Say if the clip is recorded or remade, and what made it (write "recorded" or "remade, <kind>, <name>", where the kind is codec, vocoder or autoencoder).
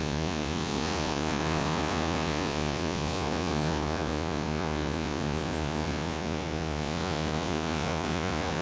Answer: remade, vocoder, Vocos